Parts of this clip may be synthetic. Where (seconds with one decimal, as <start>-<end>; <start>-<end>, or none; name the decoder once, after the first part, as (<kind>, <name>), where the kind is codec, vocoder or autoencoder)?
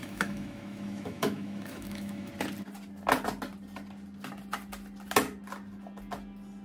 0.0-2.3 (autoencoder, DAC-VAE)